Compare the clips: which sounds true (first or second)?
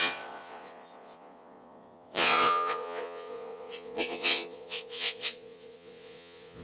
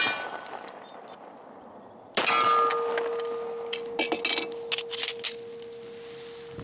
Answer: second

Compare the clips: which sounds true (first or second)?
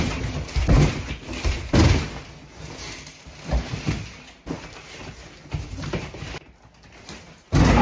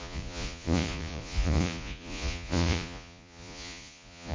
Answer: first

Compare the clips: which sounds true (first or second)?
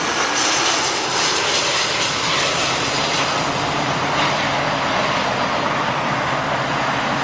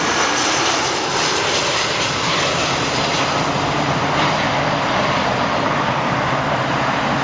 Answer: first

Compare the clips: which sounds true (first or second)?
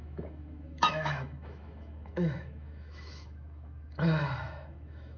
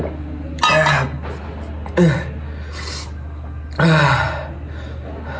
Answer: second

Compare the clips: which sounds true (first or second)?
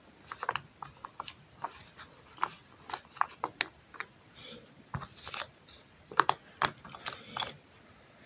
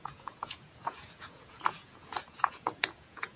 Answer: first